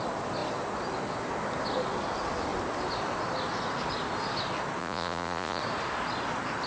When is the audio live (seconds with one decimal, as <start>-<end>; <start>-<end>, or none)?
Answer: 0.0-4.8; 5.6-6.7